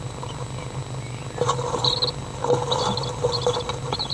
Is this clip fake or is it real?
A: real